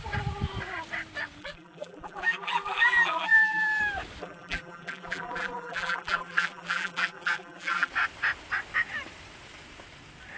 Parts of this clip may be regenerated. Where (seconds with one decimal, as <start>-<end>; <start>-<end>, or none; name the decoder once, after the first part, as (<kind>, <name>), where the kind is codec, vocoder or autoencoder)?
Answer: 1.4-3.8 (vocoder, BigVGAN v2); 4.2-7.9